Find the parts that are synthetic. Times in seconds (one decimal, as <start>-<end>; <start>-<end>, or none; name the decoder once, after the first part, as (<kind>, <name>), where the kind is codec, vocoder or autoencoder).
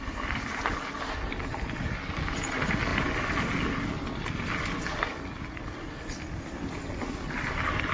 none